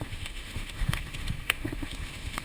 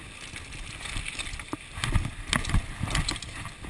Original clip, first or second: second